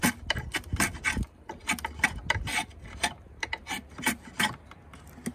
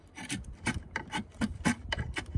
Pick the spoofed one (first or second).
second